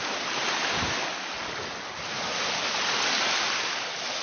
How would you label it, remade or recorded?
recorded